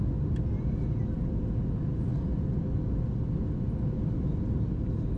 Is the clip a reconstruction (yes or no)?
no